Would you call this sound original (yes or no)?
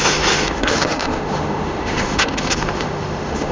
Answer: no